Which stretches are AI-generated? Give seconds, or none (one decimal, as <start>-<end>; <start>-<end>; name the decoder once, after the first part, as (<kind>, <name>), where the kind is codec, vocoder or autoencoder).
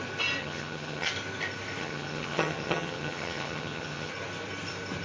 0.4-1.1 (vocoder, HiFi-GAN); 1.8-4.1